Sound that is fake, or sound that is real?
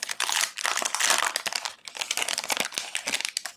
real